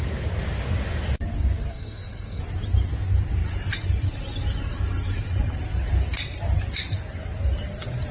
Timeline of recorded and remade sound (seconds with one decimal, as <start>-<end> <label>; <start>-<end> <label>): 0.0-1.7 recorded; 1.7-2.4 remade; 2.4-8.1 recorded